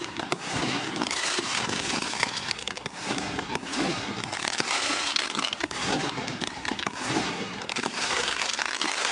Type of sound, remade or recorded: remade